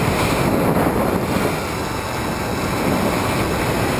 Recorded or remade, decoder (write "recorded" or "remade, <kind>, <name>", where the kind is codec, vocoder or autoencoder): recorded